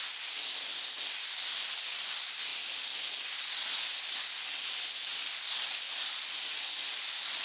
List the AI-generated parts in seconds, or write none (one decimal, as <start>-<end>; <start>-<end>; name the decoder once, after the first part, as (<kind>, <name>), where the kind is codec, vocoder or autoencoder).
none